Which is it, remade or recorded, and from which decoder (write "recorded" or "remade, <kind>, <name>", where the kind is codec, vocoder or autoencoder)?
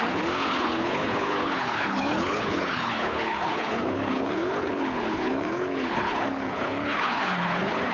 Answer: remade, codec, HILCodec